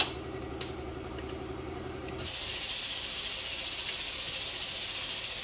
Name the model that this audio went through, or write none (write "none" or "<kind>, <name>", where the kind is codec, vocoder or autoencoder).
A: none